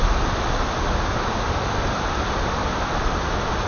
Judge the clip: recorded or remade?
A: recorded